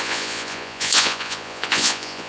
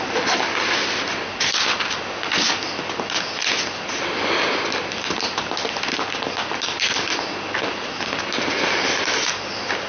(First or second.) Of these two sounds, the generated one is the first